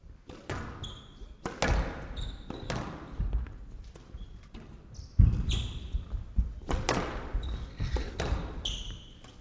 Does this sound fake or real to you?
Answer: real